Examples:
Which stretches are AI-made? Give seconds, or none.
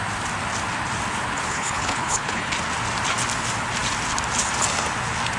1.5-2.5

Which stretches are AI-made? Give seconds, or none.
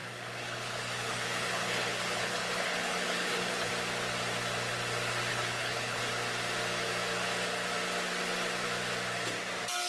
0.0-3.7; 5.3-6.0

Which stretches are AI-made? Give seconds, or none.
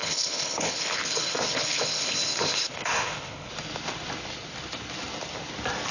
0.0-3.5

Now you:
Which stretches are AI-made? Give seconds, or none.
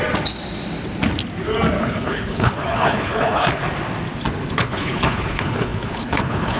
1.8-3.6; 4.5-6.6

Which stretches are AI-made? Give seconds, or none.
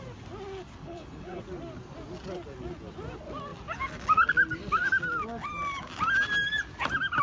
0.8-1.4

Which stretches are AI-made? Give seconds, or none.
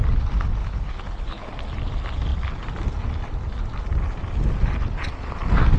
0.6-1.5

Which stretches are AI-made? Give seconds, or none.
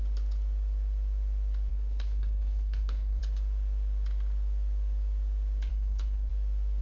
1.7-3.2; 5.7-6.3